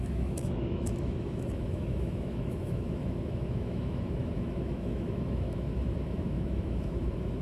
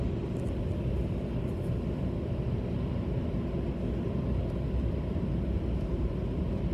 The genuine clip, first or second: second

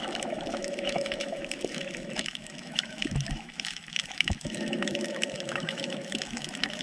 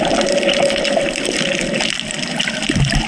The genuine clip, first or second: second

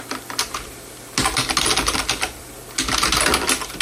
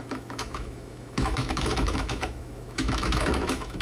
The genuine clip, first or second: first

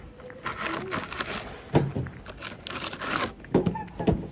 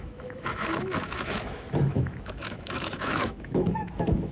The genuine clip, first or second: first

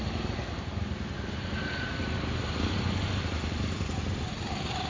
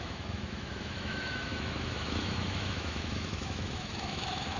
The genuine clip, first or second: first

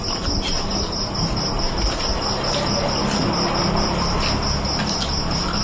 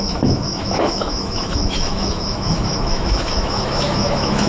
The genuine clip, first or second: first